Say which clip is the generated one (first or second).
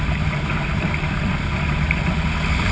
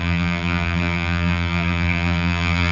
second